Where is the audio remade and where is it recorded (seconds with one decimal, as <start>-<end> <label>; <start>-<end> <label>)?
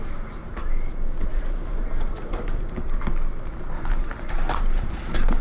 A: 0.0-0.5 remade; 0.5-1.3 recorded; 1.3-3.1 remade; 3.1-3.8 recorded; 3.8-5.4 remade